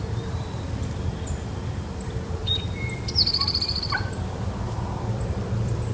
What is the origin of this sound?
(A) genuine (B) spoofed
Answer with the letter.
B